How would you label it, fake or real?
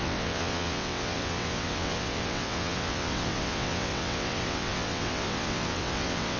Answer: fake